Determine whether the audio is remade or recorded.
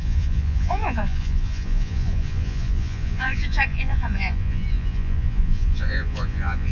remade